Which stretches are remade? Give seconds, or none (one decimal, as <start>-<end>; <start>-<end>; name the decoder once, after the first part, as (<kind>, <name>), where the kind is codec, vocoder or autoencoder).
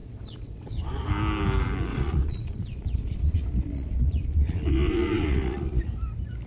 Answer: 0.0-1.1 (vocoder, Vocos); 1.9-5.8